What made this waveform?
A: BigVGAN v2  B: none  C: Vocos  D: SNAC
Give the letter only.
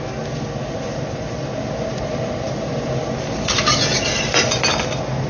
B